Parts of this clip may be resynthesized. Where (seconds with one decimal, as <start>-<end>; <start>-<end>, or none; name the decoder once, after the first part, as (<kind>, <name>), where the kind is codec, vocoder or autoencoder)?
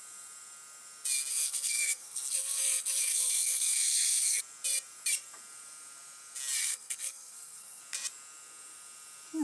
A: 1.3-4.4 (codec, SNAC); 6.6-7.8